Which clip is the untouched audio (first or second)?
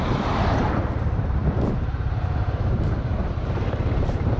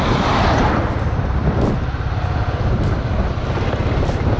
second